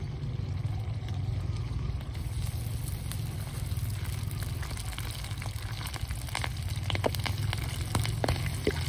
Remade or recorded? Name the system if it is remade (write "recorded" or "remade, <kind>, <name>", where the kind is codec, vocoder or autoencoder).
recorded